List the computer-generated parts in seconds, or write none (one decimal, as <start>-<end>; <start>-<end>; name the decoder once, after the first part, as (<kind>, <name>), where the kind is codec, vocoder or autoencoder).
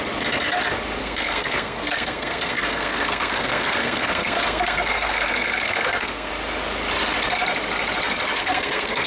1.0-6.3 (codec, SNAC); 8.4-9.1